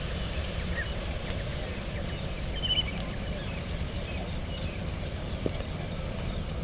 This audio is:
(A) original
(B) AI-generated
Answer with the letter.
B